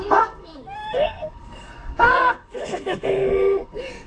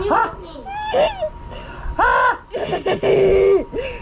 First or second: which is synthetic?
first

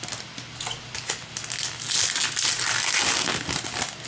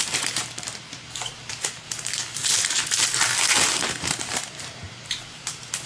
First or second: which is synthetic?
second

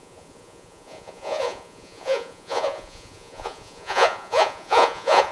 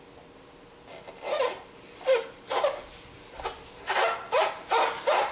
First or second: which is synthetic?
first